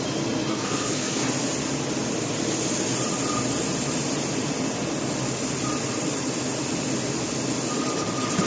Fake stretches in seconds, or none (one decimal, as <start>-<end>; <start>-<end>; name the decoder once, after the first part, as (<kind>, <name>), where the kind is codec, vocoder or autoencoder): 0.5-1.2 (codec, SNAC)